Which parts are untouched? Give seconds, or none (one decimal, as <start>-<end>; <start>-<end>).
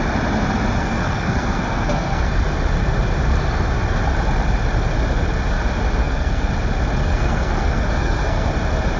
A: 0.0-0.8; 2.3-6.0; 6.5-7.0; 8.5-9.0